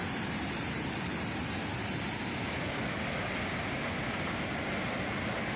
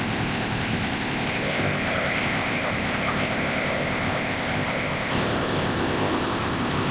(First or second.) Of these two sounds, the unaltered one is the first